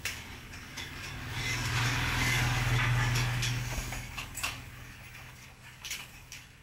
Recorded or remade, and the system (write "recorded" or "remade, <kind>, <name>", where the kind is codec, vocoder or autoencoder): remade, codec, DAC